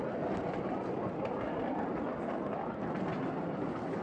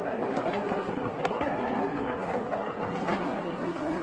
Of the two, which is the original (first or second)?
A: first